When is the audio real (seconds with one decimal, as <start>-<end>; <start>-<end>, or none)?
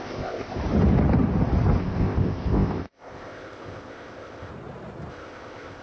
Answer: 0.6-1.8; 4.5-5.1